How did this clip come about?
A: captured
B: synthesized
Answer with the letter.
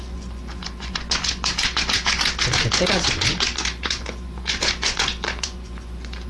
B